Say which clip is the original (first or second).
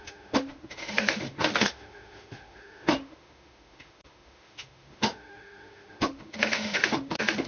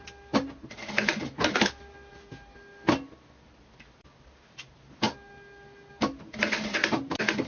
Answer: second